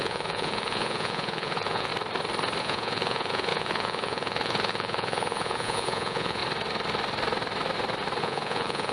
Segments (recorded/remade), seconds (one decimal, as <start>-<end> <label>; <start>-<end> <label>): 0.0-1.9 remade; 1.9-2.6 recorded; 2.6-6.4 remade; 6.4-8.2 recorded; 8.2-8.9 remade